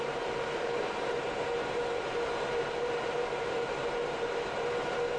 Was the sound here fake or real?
fake